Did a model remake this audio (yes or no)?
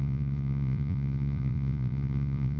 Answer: yes